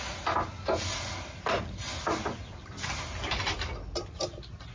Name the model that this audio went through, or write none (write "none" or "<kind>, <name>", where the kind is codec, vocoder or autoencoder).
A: none